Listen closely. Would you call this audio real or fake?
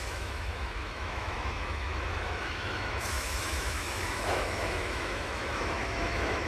fake